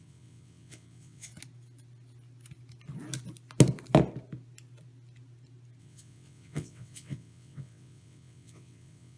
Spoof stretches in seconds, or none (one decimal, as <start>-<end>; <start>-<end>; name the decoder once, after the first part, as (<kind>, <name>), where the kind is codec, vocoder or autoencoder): 0.0-1.3 (vocoder, WaveNeXt); 5.8-9.2